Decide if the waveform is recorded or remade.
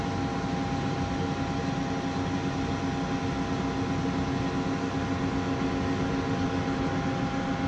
recorded